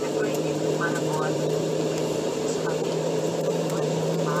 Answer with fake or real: fake